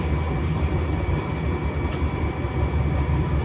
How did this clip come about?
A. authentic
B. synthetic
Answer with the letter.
B